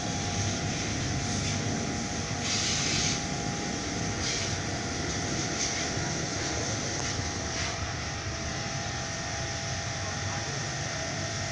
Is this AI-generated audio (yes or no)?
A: yes